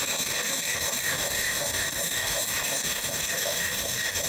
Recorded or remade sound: remade